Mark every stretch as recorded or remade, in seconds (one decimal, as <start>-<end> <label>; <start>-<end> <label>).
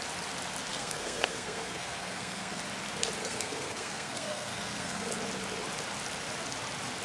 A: 0.0-0.7 recorded; 0.7-2.6 remade; 2.6-3.2 recorded; 3.2-5.1 remade; 5.1-7.0 recorded